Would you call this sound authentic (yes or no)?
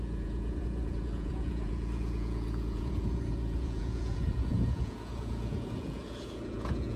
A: no